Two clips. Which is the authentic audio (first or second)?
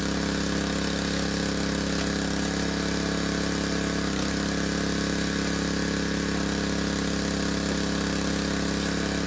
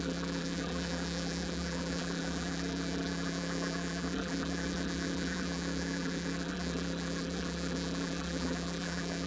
first